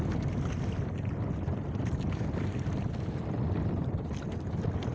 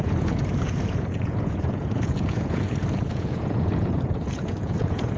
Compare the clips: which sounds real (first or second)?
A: first